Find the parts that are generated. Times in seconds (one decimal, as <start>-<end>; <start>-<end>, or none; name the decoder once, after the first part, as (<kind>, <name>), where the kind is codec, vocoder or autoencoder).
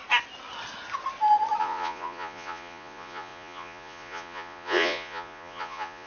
1.6-6.1 (vocoder, Vocos)